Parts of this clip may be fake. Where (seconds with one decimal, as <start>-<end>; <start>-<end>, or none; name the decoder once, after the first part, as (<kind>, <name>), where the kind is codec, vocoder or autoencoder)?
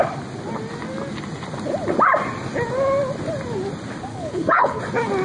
4.1-4.8 (codec, HILCodec)